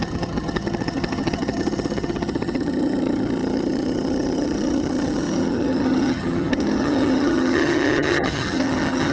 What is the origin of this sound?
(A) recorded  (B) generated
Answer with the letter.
B